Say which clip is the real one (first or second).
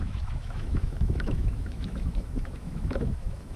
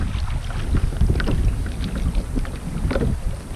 second